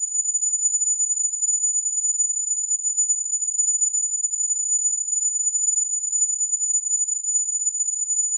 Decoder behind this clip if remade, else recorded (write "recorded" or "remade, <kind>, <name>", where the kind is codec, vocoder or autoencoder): remade, vocoder, Vocos